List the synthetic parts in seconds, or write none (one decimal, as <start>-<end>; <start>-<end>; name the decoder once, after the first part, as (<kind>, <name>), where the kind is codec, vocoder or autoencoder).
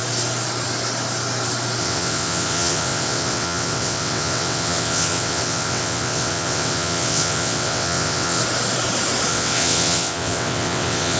1.8-8.4 (vocoder, WaveNeXt); 9.3-11.2